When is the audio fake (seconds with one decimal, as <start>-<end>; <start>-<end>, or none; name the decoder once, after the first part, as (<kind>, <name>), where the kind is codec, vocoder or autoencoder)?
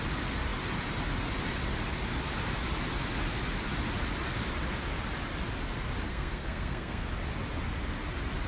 6.1-7.1 (codec, SNAC)